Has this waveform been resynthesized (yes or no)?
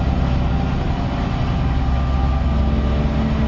no